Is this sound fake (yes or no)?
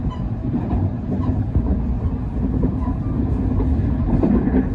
no